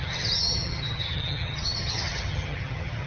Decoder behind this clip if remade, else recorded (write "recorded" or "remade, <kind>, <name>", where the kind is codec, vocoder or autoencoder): remade, vocoder, HiFi-GAN